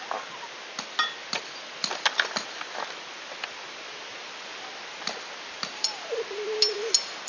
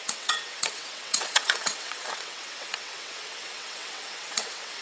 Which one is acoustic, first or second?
first